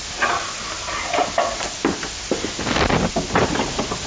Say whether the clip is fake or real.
real